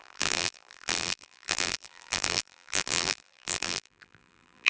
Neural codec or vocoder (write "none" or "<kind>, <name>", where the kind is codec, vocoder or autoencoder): vocoder, BigVGAN v2